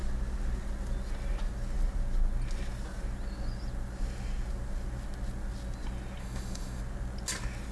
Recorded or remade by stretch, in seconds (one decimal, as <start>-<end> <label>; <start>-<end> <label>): 0.0-6.2 recorded; 6.2-6.8 remade; 6.8-7.7 recorded